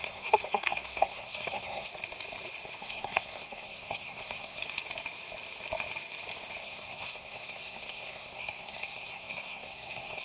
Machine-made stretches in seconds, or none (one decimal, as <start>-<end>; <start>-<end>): 0.0-1.9; 2.8-4.6; 6.6-10.2